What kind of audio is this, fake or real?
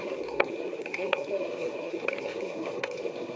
fake